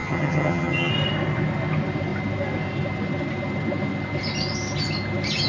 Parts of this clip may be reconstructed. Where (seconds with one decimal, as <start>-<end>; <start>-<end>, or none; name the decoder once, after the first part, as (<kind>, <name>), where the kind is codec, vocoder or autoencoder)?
0.0-0.9 (vocoder, HiFi-GAN)

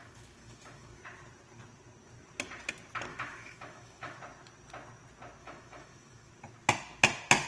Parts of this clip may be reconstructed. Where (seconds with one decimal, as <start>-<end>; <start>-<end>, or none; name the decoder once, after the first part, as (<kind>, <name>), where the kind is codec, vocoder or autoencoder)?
0.0-1.0 (autoencoder, DAC-VAE); 3.1-4.2; 5.4-6.3

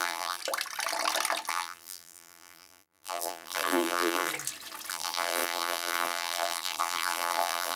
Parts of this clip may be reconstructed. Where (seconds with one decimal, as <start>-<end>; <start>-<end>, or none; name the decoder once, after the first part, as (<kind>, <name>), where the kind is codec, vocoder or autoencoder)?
0.0-0.4 (vocoder, BigVGAN v2); 1.5-4.3; 4.9-7.8

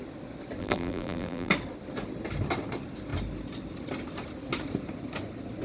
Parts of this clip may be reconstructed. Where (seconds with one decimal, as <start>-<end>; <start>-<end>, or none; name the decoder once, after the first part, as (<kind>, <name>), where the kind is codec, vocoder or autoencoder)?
0.6-1.5 (vocoder, BigVGAN v2)

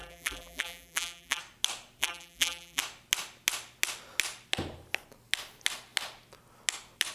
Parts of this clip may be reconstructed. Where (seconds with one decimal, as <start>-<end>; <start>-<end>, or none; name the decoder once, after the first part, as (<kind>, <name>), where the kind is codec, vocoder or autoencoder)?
0.0-1.4 (vocoder, BigVGAN v2); 2.0-2.8